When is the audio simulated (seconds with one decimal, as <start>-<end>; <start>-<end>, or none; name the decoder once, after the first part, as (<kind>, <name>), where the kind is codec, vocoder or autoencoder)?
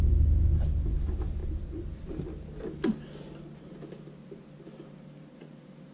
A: none